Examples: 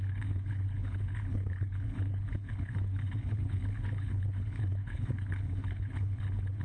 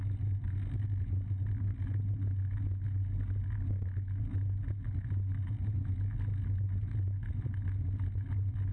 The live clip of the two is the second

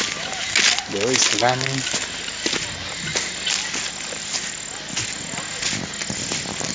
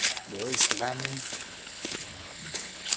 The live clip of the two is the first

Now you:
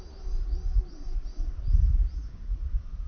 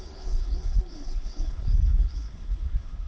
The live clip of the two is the first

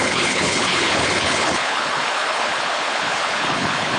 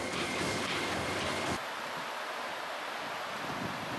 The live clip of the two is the second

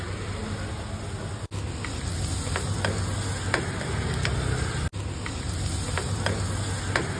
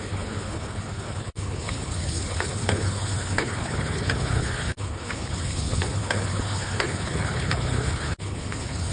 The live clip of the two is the first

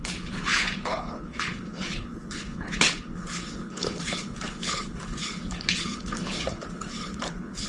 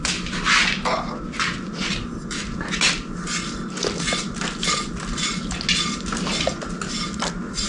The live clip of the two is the second